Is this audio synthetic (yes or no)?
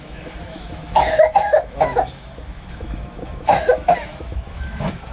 yes